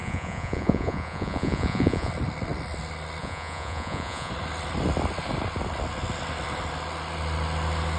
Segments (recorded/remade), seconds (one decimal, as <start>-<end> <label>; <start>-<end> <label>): 0.0-2.1 remade; 2.1-3.2 recorded; 3.2-4.3 remade; 4.3-8.0 recorded